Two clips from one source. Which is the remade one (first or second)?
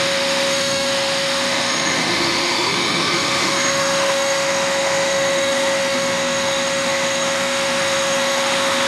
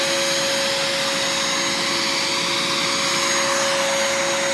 first